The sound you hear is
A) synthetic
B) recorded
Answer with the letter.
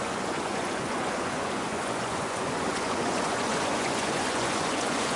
A